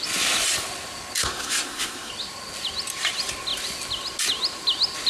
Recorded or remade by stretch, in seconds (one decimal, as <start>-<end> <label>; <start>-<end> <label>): 0.0-1.2 recorded; 1.2-2.1 remade; 2.1-5.1 recorded